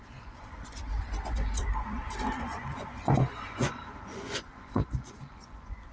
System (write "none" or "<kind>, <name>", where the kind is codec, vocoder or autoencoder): vocoder, Vocos